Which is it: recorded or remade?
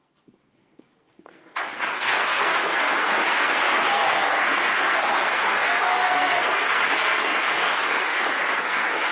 remade